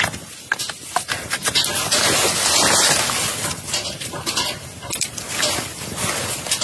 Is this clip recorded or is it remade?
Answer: recorded